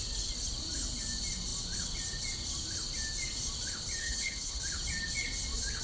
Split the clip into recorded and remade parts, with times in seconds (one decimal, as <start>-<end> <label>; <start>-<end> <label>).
0.0-4.0 recorded; 4.0-4.6 remade; 4.6-5.8 recorded